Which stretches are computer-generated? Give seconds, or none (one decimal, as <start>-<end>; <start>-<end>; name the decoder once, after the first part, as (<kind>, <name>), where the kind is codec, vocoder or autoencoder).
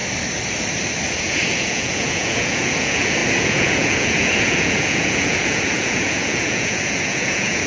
1.2-7.7 (vocoder, Vocos)